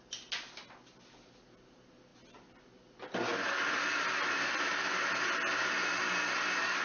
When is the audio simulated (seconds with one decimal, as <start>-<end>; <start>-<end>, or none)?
none

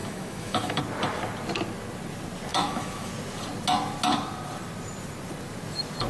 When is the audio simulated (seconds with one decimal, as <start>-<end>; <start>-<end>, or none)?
0.0-0.8; 2.5-3.1

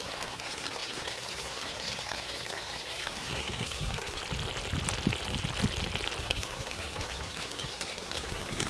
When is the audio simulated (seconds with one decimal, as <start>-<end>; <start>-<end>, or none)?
0.0-4.2; 6.2-8.7

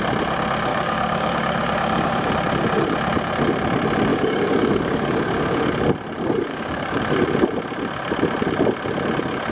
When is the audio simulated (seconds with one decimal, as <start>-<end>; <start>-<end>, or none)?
0.7-2.3; 4.1-5.7; 6.5-7.0

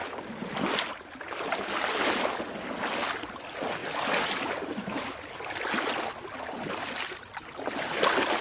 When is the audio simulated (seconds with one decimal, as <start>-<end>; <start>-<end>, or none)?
none

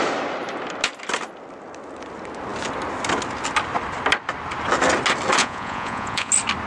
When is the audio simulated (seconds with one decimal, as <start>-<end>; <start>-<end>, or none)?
5.4-6.3